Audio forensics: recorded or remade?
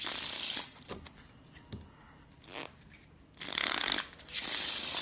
recorded